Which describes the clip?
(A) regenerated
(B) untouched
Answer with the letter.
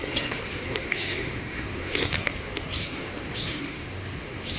A